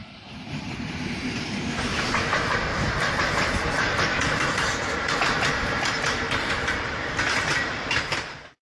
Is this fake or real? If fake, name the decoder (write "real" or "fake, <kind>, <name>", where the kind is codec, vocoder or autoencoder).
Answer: fake, vocoder, BigVGAN v2